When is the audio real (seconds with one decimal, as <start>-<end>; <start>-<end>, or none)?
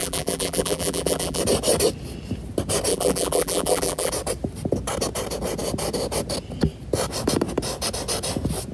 1.4-2.9; 4.1-8.7